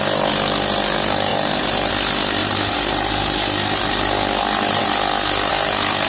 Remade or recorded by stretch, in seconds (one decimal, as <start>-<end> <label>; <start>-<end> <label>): 0.0-1.3 recorded; 1.3-1.9 remade; 1.9-2.4 recorded; 2.4-3.1 remade; 3.1-6.1 recorded